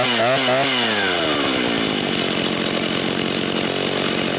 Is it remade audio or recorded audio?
recorded